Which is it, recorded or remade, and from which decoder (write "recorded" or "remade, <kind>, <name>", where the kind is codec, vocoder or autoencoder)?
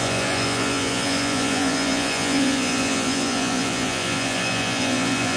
remade, vocoder, Vocos